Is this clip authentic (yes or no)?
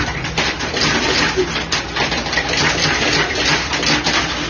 yes